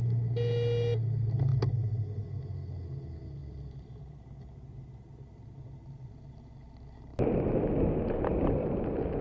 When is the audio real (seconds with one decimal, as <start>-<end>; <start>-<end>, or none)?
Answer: 0.0-9.2